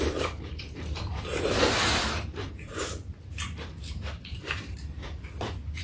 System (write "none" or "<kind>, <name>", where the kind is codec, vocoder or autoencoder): vocoder, BigVGAN v2